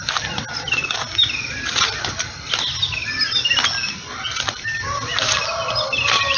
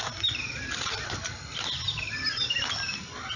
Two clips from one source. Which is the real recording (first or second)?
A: first